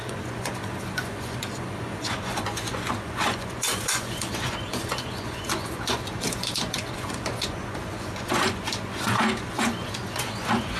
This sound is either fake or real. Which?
fake